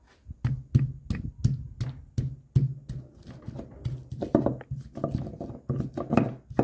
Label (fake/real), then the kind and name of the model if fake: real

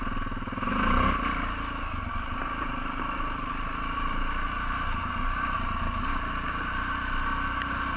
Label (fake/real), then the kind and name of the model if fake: real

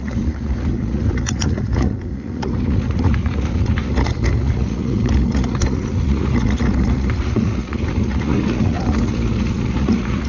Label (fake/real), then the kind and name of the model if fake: fake, vocoder, Vocos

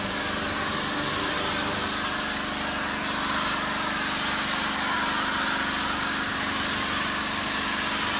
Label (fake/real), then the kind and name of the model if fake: real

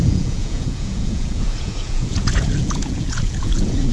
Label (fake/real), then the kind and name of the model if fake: fake, vocoder, Vocos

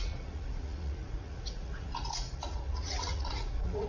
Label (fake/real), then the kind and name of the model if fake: fake, vocoder, Vocos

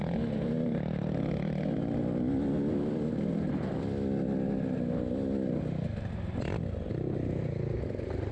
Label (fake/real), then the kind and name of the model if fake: real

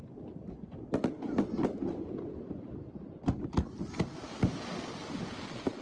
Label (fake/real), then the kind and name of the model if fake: real